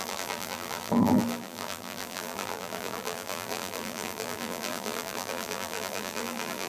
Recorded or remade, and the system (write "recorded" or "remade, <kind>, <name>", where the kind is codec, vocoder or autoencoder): remade, vocoder, BigVGAN v2